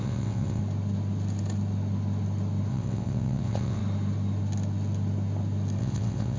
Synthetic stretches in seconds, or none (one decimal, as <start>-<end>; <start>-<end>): 0.0-0.6; 2.7-3.8; 5.8-6.4